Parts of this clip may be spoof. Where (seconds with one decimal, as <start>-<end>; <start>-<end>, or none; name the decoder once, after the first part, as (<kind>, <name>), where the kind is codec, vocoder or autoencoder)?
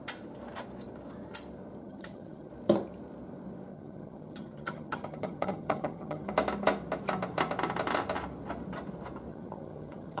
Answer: 1.8-2.5 (vocoder, HiFi-GAN); 3.7-6.3; 9.3-10.2